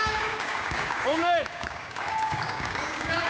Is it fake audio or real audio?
fake